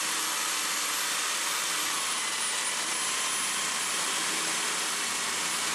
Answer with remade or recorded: recorded